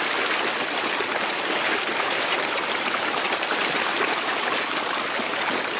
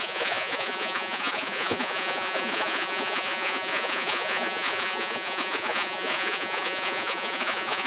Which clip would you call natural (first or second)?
first